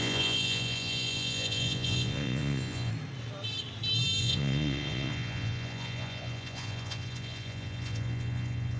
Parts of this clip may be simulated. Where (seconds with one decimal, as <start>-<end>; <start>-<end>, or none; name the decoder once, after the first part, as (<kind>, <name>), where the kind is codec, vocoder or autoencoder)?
0.0-2.9 (vocoder, Vocos); 4.2-8.8